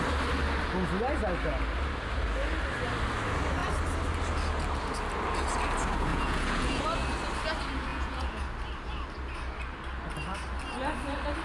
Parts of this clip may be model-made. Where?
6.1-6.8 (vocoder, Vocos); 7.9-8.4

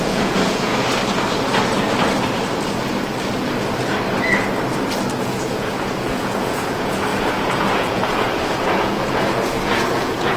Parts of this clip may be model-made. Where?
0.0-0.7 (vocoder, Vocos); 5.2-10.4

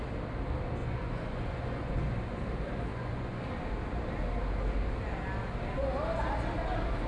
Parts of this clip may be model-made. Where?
0.8-2.0 (vocoder, Vocos); 2.9-3.4

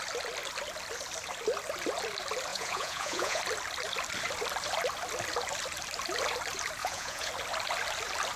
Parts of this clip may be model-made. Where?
2.5-3.4 (vocoder, Vocos); 6.8-7.3